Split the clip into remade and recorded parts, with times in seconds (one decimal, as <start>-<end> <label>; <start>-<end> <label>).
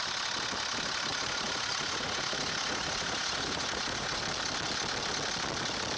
0.0-1.1 recorded; 1.1-4.2 remade; 4.2-6.0 recorded